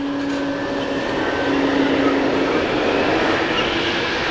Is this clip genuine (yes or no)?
yes